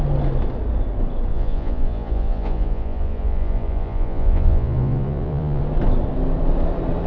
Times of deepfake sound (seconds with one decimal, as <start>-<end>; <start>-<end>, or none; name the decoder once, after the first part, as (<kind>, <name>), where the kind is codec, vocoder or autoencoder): 1.3-5.6 (vocoder, Vocos)